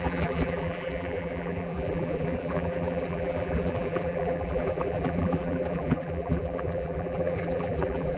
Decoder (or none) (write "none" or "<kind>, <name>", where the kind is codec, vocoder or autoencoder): vocoder, BigVGAN v2